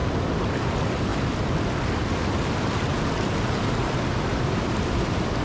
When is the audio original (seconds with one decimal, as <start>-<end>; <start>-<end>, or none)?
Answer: 0.6-4.3